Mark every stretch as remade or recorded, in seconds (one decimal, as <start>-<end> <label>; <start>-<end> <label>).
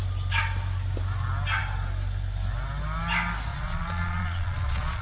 0.0-3.5 recorded; 3.5-5.0 remade